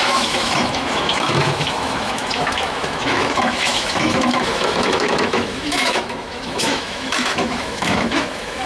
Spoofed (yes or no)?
yes